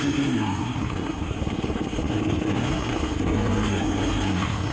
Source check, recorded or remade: remade